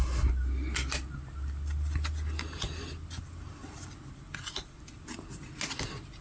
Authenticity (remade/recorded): recorded